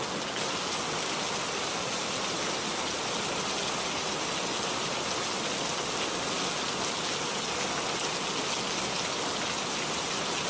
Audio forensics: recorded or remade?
recorded